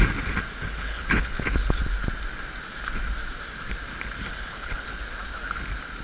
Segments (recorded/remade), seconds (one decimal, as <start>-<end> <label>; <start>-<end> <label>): 0.0-0.6 recorded; 0.6-1.8 remade; 1.8-4.3 recorded; 4.3-5.0 remade; 5.0-6.0 recorded